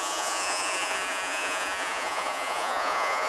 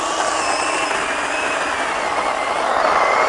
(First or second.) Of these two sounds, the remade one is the first